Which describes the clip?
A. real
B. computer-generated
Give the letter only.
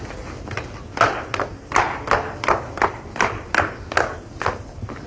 A